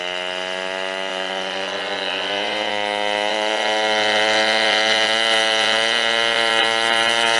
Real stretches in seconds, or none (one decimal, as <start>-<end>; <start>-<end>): 0.0-1.1; 2.7-3.3